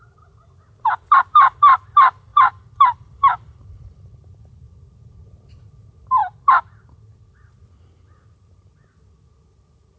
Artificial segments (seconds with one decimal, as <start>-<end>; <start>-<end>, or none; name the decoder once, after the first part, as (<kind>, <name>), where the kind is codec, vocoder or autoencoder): 2.3-4.5 (vocoder, BigVGAN v2); 6.2-7.5